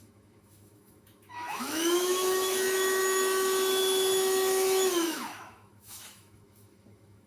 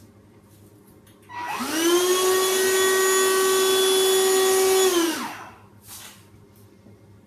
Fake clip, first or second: first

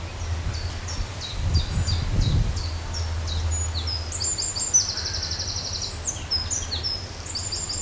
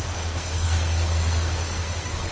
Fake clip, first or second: second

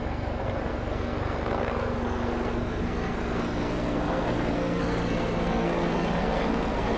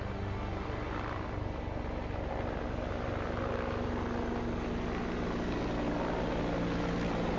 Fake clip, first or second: first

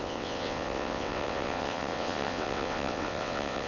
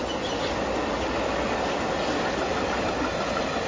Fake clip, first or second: first